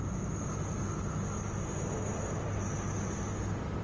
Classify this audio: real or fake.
real